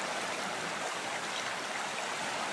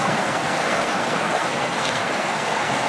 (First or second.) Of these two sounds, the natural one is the first